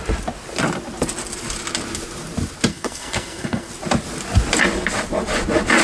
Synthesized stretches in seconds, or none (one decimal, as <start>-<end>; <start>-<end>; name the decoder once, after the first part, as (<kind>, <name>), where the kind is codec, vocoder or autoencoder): 2.7-3.7 (codec, SNAC)